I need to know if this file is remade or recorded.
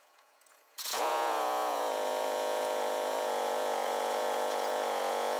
remade